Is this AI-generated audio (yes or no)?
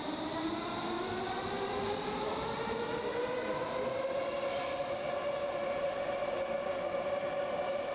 no